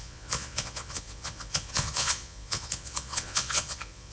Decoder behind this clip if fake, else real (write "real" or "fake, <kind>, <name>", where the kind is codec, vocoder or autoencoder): fake, vocoder, Vocos